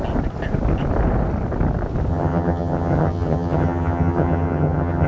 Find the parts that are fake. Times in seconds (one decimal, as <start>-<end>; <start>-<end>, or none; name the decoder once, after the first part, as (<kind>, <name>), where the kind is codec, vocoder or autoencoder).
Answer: 2.1-5.1 (vocoder, HiFi-GAN)